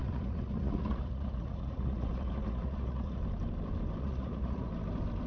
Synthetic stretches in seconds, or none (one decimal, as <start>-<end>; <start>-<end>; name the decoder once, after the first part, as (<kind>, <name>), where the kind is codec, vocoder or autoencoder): 0.0-3.2 (vocoder, Vocos); 4.0-4.7